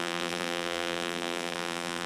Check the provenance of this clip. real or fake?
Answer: fake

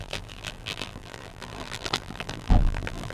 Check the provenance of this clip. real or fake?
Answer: fake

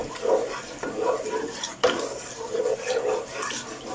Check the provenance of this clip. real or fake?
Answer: real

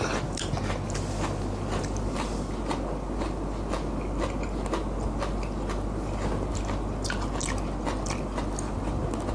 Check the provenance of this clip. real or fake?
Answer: real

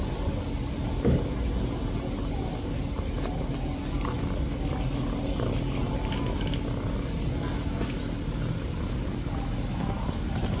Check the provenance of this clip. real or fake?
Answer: real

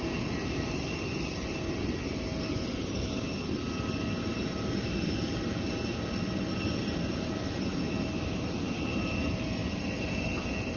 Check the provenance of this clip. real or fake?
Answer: real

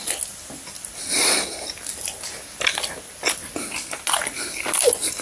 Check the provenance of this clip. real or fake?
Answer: real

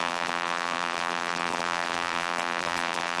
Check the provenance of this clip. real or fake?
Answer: fake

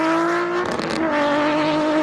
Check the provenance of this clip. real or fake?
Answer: real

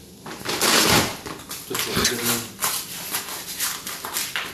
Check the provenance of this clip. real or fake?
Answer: real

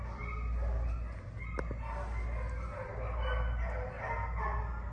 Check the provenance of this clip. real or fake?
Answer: real